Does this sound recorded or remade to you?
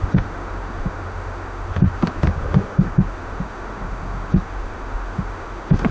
remade